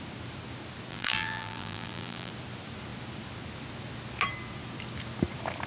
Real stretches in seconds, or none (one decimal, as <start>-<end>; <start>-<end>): 0.0-0.9; 2.3-5.7